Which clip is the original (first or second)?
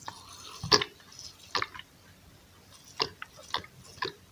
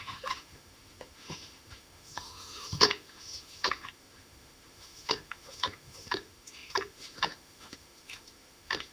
first